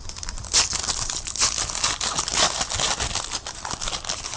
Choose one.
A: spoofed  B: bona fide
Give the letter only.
B